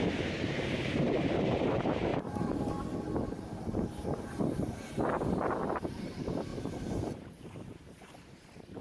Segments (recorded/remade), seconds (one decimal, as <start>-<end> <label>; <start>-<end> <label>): 0.0-2.1 remade; 2.1-5.6 recorded; 5.6-6.5 remade; 6.5-7.0 recorded; 7.0-8.8 remade